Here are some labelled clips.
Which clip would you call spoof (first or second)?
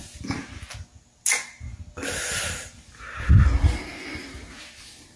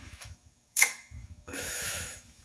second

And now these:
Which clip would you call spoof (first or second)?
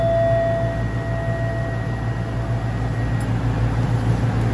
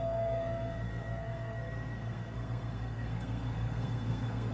second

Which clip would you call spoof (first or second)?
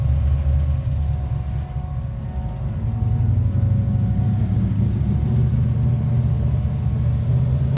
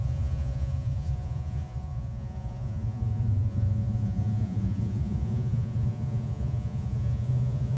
second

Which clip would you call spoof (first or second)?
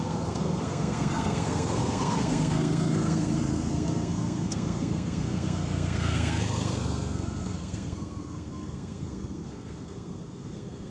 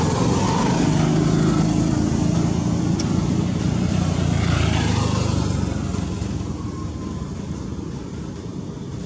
first